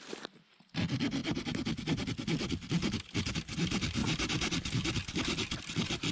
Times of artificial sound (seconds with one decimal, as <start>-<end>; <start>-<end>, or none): none